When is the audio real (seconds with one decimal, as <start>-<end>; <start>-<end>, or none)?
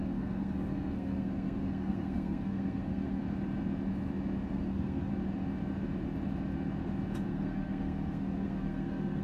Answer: 3.2-4.5; 5.1-7.3